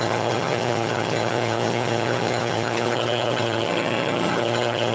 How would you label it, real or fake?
fake